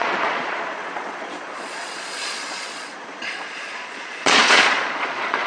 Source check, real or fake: fake